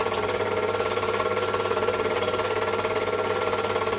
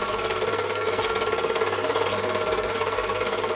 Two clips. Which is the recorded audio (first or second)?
first